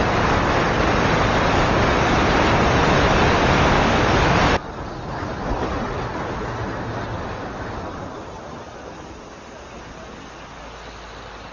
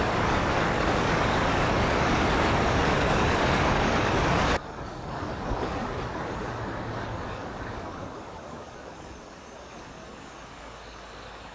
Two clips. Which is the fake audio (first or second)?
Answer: second